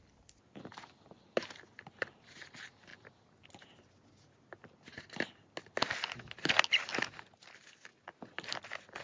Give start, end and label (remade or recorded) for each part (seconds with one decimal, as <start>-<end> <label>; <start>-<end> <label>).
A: 0.0-9.0 recorded